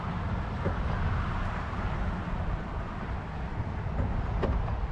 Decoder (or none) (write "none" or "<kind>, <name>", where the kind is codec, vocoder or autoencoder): none